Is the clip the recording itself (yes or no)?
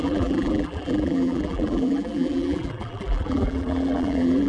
no